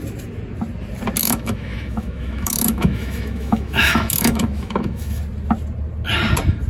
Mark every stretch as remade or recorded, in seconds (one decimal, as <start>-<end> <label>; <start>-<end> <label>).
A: 0.0-1.2 recorded; 1.2-5.2 remade; 5.2-6.7 recorded